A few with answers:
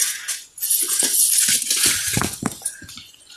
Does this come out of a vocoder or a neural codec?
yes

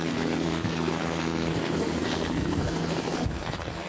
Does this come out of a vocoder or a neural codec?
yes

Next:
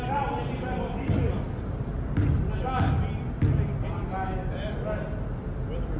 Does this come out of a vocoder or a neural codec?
no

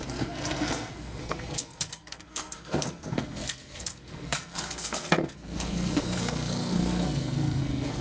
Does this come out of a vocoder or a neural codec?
yes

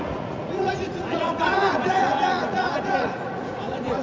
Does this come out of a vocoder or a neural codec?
yes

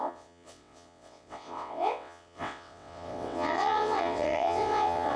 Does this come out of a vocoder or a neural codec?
yes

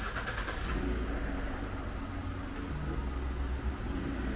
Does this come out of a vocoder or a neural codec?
no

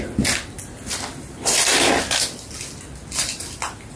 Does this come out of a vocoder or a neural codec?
no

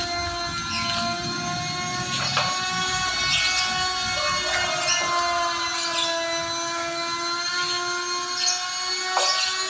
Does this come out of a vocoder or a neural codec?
no